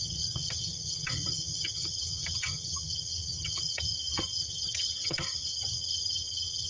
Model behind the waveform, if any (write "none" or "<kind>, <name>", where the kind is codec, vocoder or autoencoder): vocoder, HiFi-GAN